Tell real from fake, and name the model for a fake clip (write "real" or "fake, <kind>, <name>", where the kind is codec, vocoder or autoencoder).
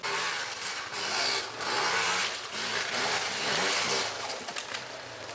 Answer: real